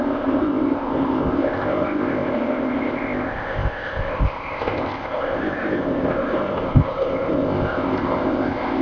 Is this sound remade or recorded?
remade